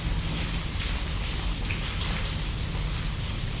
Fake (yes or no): no